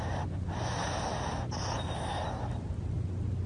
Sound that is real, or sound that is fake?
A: real